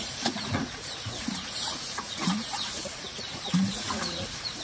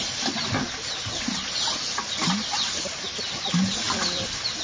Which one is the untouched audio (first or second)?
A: second